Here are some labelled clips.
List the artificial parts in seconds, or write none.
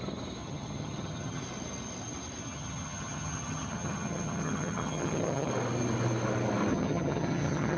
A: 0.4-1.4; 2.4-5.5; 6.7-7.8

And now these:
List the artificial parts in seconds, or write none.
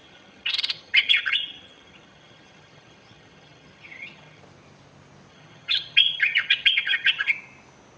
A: 0.0-4.4; 5.3-7.3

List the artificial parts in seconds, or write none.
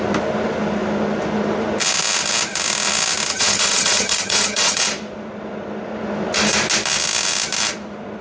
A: 3.3-4.8